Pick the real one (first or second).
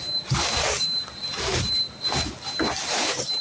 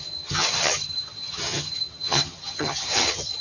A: first